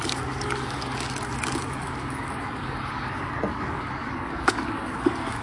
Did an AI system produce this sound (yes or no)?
yes